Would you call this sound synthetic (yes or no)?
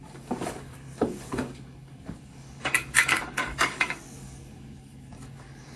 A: yes